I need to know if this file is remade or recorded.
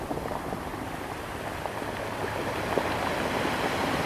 recorded